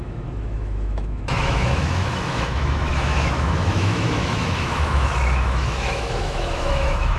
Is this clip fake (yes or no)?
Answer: yes